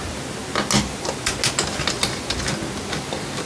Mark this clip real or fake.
real